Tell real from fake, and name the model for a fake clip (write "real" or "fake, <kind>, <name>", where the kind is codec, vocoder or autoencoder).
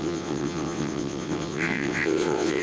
fake, vocoder, WaveNeXt